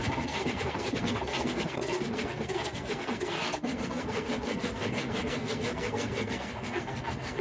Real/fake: fake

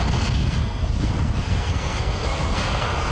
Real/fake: fake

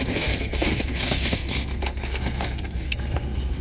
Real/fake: fake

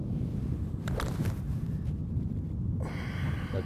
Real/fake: real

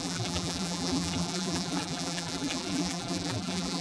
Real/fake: fake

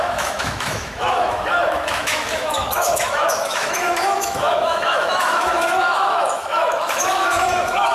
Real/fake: fake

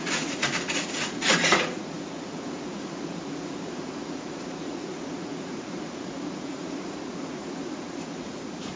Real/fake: fake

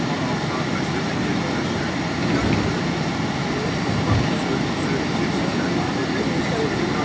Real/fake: fake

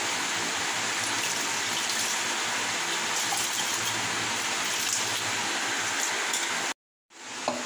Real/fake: real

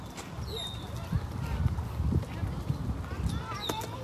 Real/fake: real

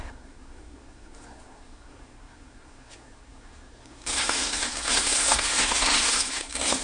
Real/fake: fake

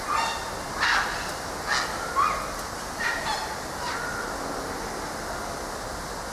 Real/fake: real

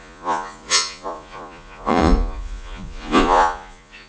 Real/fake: fake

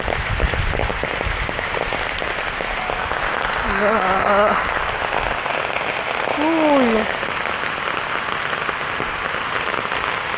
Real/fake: real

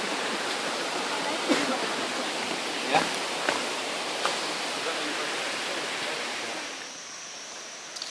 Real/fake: real